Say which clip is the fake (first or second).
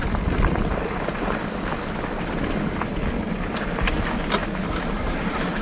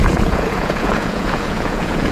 second